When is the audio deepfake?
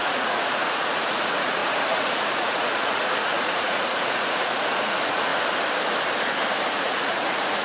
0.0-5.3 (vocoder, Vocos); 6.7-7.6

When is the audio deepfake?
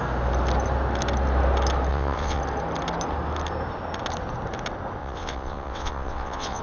1.9-2.4 (vocoder, WaveNeXt); 5.0-6.6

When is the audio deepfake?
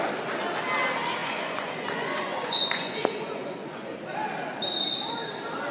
1.2-4.0 (vocoder, Vocos)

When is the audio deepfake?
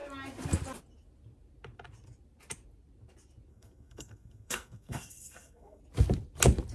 3.5-5.8 (codec, SNAC)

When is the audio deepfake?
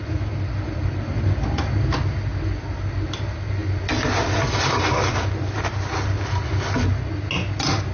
none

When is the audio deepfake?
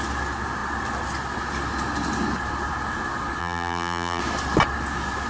3.4-4.2 (vocoder, BigVGAN v2)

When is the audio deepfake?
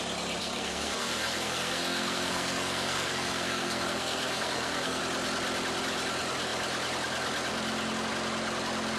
0.4-5.0 (codec, SNAC)